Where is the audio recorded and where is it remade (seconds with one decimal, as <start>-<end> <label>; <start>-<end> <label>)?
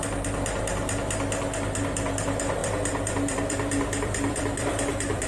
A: 0.0-2.6 recorded; 2.6-5.3 remade